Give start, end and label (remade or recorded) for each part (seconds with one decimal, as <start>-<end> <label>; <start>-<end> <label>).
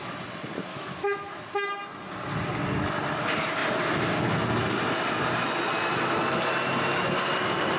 0.0-0.7 recorded; 0.7-1.4 remade; 1.4-7.8 recorded